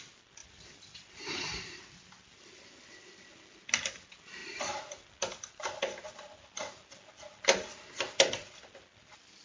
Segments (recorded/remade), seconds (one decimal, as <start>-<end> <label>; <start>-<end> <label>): 0.0-0.4 recorded; 0.4-1.8 remade; 1.8-4.4 recorded; 4.4-5.8 remade; 5.8-9.4 recorded